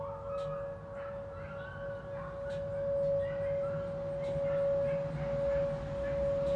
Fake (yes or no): no